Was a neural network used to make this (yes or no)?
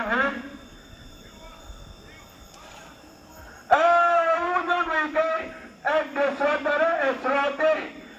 yes